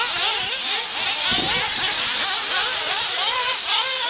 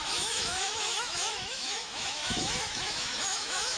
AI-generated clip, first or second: second